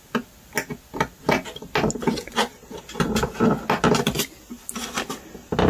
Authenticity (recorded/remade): recorded